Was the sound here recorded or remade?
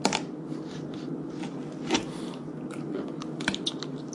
recorded